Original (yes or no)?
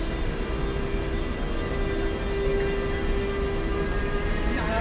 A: yes